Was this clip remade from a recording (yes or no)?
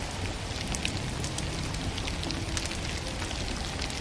no